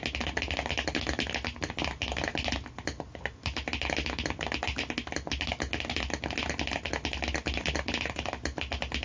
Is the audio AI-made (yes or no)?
no